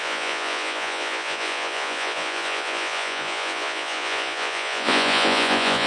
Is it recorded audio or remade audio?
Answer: remade